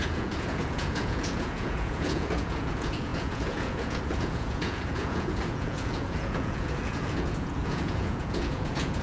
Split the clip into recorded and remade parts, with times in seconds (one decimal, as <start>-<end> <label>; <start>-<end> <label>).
0.0-9.0 remade